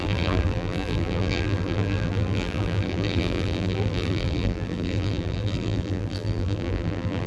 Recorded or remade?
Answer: remade